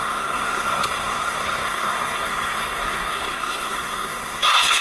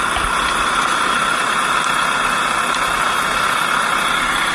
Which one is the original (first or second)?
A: second